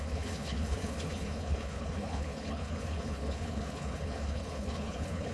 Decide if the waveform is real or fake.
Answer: fake